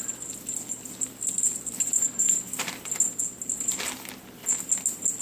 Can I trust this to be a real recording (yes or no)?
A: yes